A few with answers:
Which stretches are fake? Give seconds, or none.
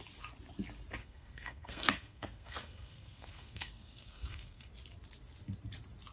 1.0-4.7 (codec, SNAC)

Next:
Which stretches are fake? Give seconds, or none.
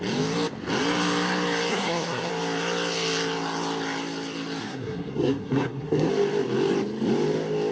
1.7-2.3 (codec, SNAC); 4.6-6.1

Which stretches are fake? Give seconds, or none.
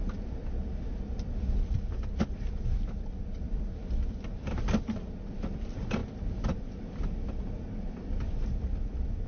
none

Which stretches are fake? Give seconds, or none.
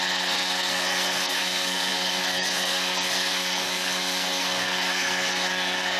0.0-6.0 (codec, SNAC)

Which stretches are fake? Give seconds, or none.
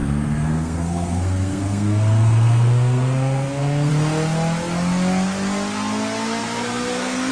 0.0-3.9 (codec, SNAC); 6.4-7.3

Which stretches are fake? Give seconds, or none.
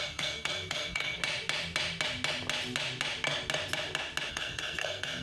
0.0-1.2 (codec, SNAC); 4.3-5.2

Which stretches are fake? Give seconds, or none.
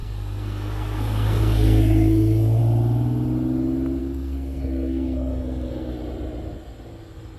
0.0-2.6 (codec, SNAC); 4.0-5.9